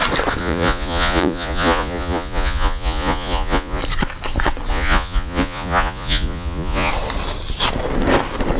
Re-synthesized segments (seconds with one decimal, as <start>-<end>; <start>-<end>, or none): 0.4-3.8; 4.7-6.9